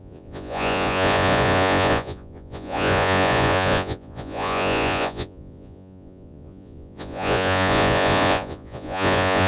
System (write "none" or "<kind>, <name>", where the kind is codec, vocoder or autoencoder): vocoder, Vocos